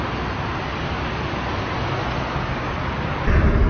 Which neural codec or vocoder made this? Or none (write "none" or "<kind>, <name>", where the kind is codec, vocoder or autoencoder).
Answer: none